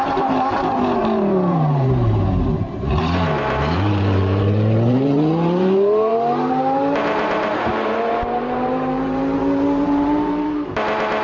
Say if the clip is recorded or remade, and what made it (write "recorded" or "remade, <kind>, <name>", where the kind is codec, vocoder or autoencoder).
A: remade, vocoder, BigVGAN v2